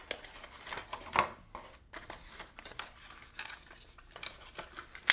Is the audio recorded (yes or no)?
yes